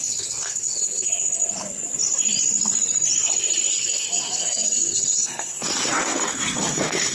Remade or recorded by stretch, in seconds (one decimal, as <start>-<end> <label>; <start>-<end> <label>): 0.0-1.4 remade; 1.4-3.7 recorded; 3.7-7.1 remade